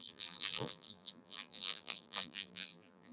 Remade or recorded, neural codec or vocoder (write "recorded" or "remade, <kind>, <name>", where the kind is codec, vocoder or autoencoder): remade, vocoder, BigVGAN v2